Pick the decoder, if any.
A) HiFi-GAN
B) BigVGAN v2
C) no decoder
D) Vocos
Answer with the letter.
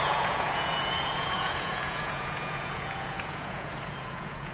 D